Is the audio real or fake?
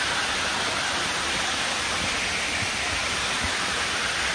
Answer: real